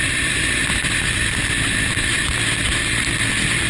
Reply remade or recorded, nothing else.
recorded